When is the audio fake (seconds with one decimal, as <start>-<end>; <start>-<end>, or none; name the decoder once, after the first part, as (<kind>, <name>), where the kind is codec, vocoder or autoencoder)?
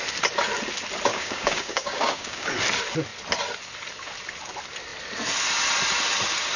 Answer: 1.1-2.5 (codec, DAC)